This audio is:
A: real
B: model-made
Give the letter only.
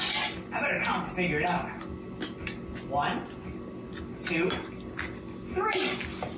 A